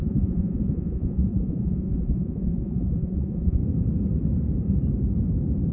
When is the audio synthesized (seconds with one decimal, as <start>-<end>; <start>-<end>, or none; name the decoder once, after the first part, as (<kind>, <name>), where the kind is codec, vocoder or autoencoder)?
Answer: 0.0-3.6 (vocoder, Vocos)